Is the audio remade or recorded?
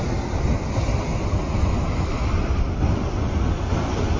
remade